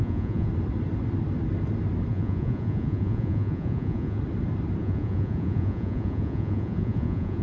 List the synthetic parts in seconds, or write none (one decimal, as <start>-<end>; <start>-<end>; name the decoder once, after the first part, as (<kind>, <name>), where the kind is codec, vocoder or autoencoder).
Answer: 0.0-0.5 (vocoder, Vocos); 2.1-4.2; 4.8-7.4